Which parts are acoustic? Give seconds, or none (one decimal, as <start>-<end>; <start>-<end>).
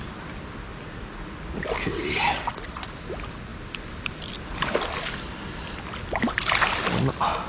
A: 0.0-0.7; 1.4-7.5